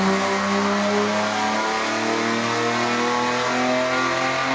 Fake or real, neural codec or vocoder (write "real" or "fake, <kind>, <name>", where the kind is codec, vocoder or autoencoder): real